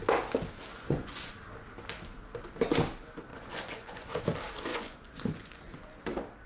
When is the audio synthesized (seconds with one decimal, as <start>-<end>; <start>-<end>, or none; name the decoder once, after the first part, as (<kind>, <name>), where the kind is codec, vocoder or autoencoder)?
0.7-1.3 (vocoder, Vocos); 3.3-4.2; 4.7-6.0